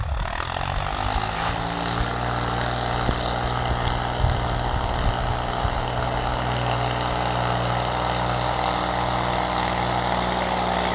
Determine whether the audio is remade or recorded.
recorded